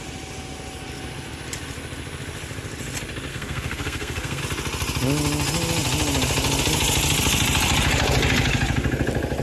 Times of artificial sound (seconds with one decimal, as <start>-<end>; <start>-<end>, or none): 3.3-4.4